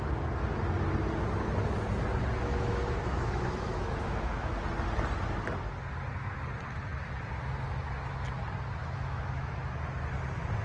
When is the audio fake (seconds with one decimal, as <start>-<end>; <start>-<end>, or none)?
2.4-4.5; 8.8-9.7